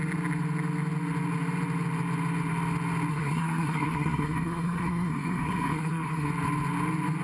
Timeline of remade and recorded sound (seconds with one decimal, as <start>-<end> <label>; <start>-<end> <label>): 0.0-3.1 recorded; 3.1-6.3 remade; 6.3-7.2 recorded